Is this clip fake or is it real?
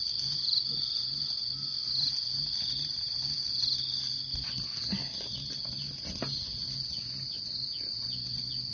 real